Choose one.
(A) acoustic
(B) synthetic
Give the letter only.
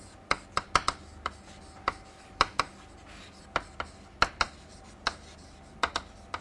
A